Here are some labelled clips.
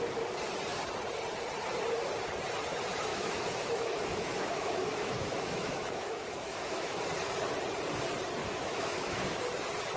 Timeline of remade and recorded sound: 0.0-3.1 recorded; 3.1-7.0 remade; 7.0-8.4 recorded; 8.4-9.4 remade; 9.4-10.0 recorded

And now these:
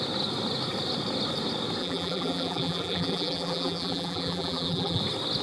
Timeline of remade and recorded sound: 0.0-1.8 recorded; 1.8-5.0 remade; 5.0-5.4 recorded

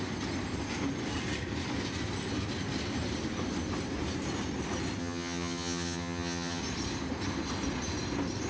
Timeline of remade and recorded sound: 0.0-5.0 recorded; 5.0-6.6 remade; 6.6-8.5 recorded

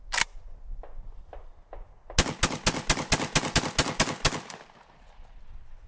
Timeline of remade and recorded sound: 0.0-5.9 recorded

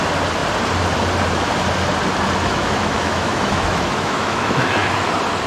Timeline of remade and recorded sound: 0.0-2.5 recorded; 2.5-5.1 remade; 5.1-5.5 recorded